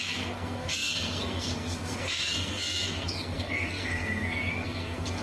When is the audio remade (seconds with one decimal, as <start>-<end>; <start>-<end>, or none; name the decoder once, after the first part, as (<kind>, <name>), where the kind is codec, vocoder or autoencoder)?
0.0-5.2 (codec, SNAC)